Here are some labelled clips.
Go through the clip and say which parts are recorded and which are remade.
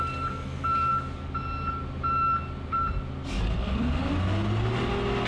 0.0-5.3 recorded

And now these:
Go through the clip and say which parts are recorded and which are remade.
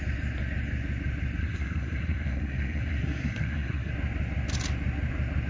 0.0-1.4 recorded; 1.4-3.9 remade; 3.9-5.5 recorded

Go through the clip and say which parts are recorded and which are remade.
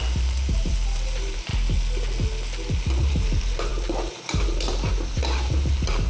0.0-1.5 remade; 1.5-3.0 recorded; 3.0-6.1 remade